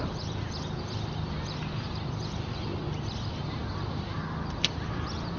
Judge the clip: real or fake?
real